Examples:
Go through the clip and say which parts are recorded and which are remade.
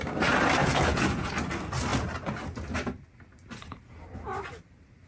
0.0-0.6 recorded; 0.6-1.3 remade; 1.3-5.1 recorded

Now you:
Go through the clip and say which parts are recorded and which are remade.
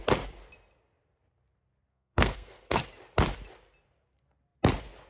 0.0-1.9 recorded; 1.9-2.8 remade; 2.8-5.1 recorded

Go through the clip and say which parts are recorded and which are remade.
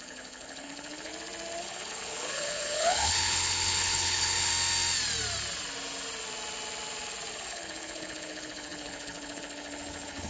0.0-1.1 remade; 1.1-1.6 recorded; 1.6-4.5 remade; 4.5-7.3 recorded; 7.3-10.3 remade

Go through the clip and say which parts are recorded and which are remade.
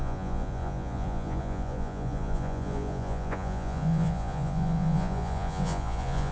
0.0-6.3 remade